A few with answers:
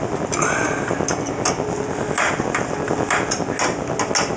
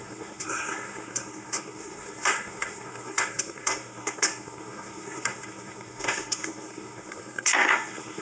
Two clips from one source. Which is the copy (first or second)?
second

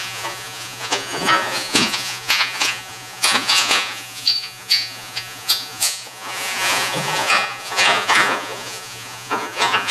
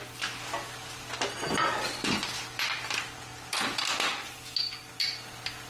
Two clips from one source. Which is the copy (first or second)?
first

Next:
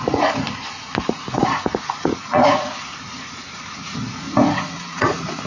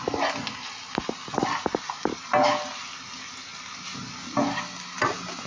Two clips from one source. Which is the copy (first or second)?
first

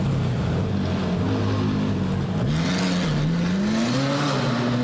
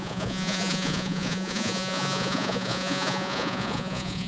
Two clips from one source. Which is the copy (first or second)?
second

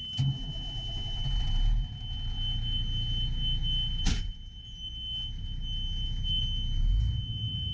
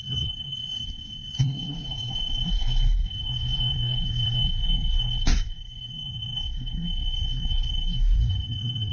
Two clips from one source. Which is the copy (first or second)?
second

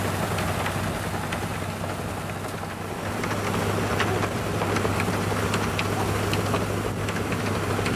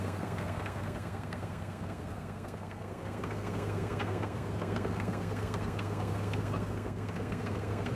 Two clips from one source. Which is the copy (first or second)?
second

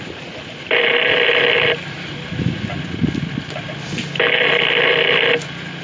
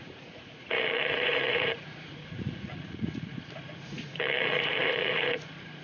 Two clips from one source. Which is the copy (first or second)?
second